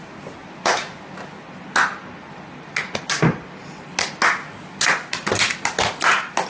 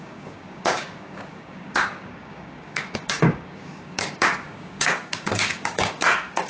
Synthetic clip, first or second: second